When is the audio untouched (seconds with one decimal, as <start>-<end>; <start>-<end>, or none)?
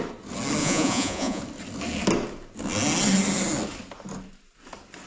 0.0-0.6; 1.4-5.1